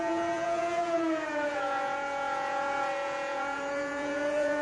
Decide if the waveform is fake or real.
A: fake